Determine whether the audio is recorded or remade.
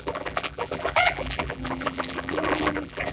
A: remade